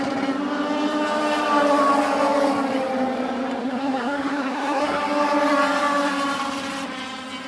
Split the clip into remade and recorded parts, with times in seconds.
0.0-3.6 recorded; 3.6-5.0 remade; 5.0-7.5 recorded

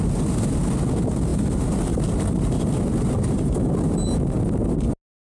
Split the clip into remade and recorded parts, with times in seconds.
0.0-5.4 recorded

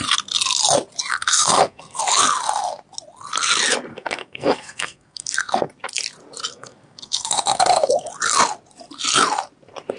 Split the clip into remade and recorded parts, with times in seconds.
0.0-1.1 recorded; 1.1-2.0 remade; 2.0-3.9 recorded; 3.9-5.7 remade; 5.7-6.5 recorded; 6.5-8.1 remade; 8.1-10.0 recorded